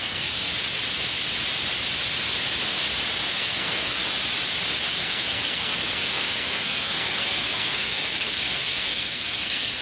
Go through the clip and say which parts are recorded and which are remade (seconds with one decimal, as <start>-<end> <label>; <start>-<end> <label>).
0.0-0.5 remade; 0.5-3.3 recorded; 3.3-4.0 remade; 4.0-4.9 recorded; 4.9-9.8 remade